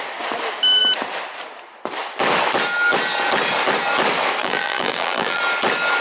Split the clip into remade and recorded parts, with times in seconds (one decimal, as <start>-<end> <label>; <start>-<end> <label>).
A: 0.0-4.4 recorded; 4.4-5.4 remade; 5.4-6.0 recorded